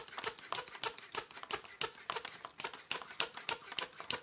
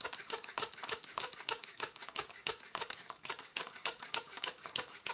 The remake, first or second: second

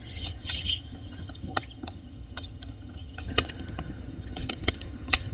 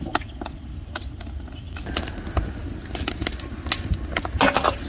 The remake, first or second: first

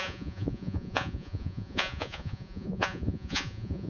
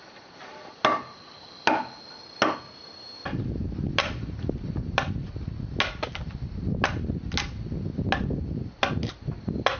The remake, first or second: first